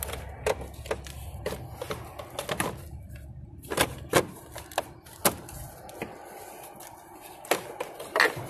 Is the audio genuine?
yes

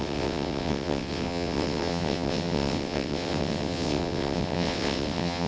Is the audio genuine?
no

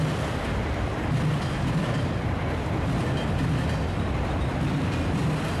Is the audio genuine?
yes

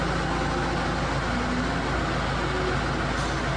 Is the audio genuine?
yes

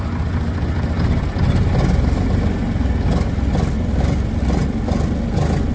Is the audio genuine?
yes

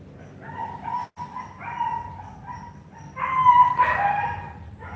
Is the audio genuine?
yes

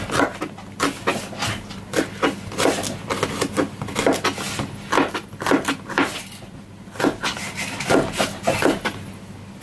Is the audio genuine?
yes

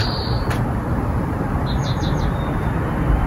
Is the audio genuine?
no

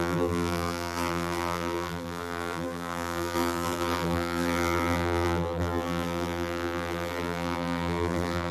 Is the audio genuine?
no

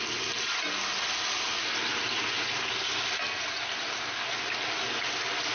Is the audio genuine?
yes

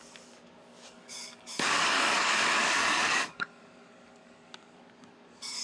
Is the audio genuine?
no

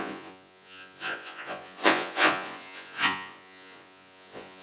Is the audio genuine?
no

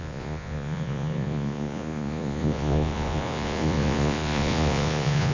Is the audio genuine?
no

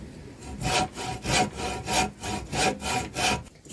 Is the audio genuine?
yes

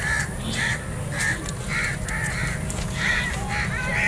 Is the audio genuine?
yes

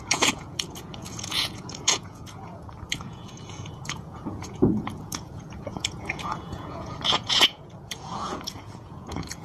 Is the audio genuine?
no